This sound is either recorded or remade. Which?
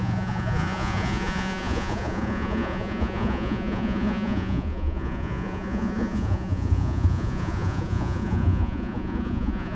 remade